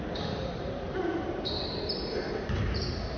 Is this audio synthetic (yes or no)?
no